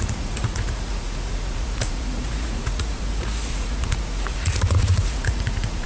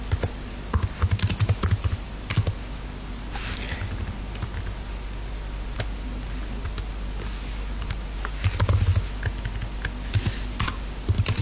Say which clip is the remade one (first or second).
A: first